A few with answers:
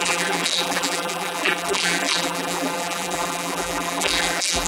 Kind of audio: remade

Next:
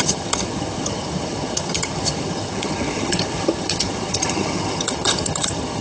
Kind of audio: remade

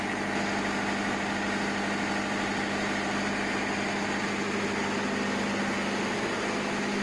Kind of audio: recorded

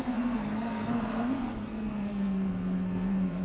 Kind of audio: remade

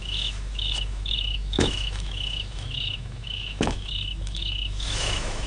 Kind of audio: remade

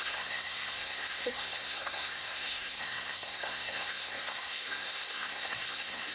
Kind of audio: remade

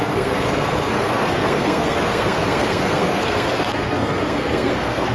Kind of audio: remade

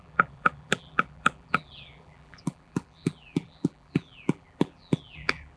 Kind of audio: remade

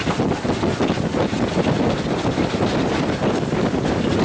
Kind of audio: recorded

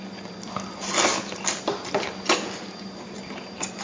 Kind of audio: recorded